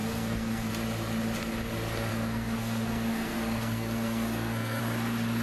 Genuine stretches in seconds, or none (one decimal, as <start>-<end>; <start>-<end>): 0.7-2.1; 4.8-5.4